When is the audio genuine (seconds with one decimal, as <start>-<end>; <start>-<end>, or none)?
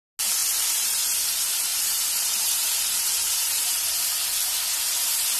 0.0-0.4; 1.0-1.7; 4.0-5.4